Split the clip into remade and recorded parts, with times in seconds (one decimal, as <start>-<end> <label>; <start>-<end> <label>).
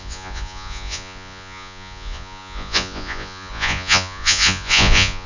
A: 0.0-5.3 remade